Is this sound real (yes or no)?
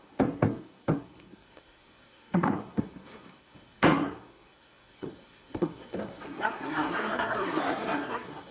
no